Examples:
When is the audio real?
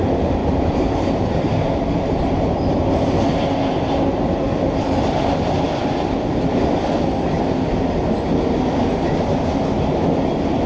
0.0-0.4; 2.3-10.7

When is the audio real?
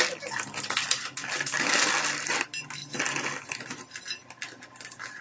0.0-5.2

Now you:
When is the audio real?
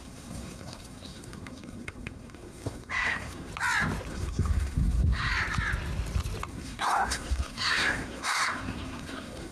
3.5-4.1; 5.3-6.5